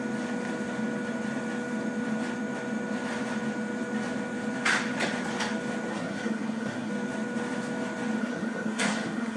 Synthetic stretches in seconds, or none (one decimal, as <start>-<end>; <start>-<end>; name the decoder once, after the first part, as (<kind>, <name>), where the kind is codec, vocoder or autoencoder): 5.9-6.9 (codec, SNAC); 8.2-9.4